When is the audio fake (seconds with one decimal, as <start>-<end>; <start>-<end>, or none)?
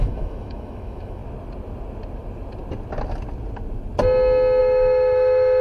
0.0-1.2; 4.6-5.6